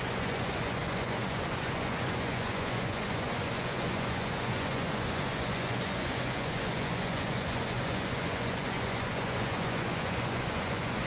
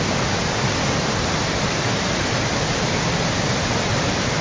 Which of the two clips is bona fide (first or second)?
second